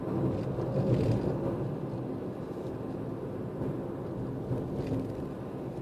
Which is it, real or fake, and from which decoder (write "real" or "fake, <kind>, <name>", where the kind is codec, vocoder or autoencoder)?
real